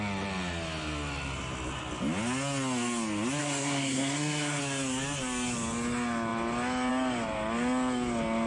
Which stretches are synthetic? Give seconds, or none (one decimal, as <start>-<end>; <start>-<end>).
3.4-4.6